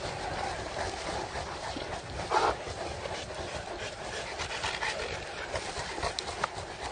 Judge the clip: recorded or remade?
recorded